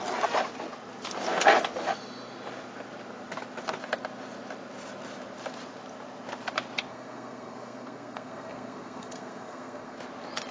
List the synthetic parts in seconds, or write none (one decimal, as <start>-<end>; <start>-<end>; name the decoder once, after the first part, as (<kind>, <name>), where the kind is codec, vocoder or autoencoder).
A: 6.9-10.0 (codec, SNAC)

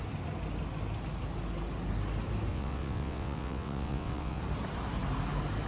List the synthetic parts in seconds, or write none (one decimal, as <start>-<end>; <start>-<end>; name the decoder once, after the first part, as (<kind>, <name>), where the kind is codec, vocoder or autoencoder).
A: 2.5-4.4 (vocoder, WaveNeXt)

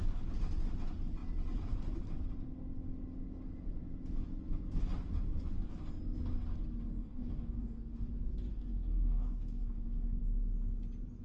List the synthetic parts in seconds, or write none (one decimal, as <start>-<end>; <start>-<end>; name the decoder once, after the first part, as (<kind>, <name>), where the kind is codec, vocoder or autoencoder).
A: 7.0-8.0 (codec, DAC); 8.5-10.2

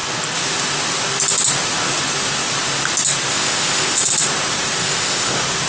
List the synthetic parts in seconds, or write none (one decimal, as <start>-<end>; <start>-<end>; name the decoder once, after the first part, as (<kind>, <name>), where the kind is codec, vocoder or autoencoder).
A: 3.3-4.1 (codec, ZipCodec); 4.8-5.3